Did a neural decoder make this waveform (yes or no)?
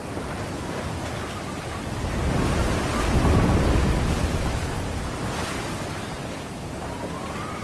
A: no